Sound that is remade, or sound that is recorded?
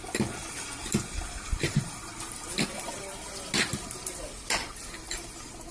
recorded